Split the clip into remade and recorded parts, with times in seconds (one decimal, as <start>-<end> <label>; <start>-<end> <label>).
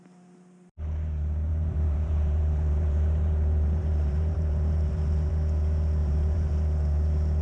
0.0-1.5 recorded; 1.5-5.3 remade; 5.3-6.0 recorded; 6.0-6.5 remade; 6.5-7.4 recorded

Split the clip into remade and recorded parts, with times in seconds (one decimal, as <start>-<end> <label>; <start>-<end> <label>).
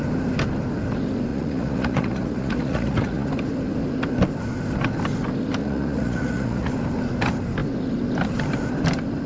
0.0-1.3 recorded; 1.3-3.3 remade; 3.3-5.6 recorded; 5.6-6.7 remade; 6.7-9.3 recorded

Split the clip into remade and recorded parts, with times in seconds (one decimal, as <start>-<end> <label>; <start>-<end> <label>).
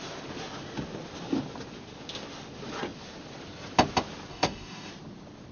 0.0-4.3 recorded; 4.3-4.9 remade; 4.9-5.5 recorded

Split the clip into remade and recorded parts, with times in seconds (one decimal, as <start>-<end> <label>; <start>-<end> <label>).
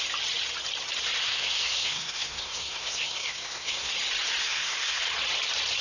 0.0-1.2 recorded; 1.2-3.9 remade; 3.9-4.4 recorded; 4.4-5.0 remade; 5.0-5.8 recorded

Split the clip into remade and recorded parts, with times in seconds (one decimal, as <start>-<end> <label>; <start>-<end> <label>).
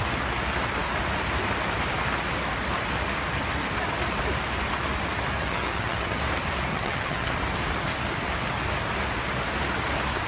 0.0-5.4 recorded; 5.4-6.2 remade; 6.2-6.7 recorded; 6.7-7.3 remade; 7.3-10.3 recorded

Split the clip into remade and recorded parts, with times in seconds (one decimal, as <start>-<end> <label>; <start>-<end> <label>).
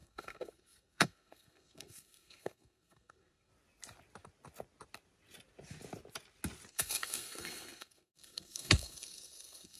0.0-3.5 remade; 3.5-6.7 recorded; 6.7-9.8 remade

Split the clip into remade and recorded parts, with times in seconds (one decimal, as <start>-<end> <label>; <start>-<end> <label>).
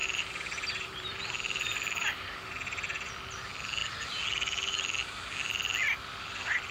0.0-3.1 remade; 3.1-6.7 recorded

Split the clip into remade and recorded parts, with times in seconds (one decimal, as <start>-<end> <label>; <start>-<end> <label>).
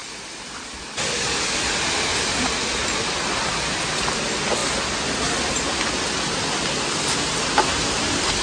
0.0-0.8 remade; 0.8-8.4 recorded